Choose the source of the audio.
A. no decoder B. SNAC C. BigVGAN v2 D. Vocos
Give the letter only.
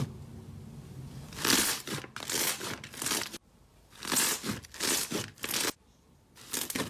A